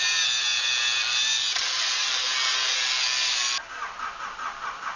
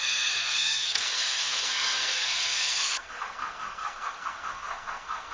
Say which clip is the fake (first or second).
second